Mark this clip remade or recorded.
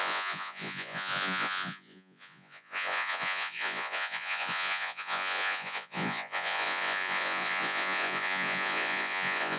remade